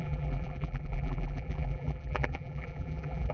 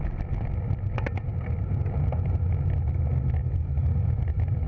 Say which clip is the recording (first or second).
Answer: second